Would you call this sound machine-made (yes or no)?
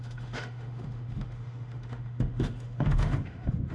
yes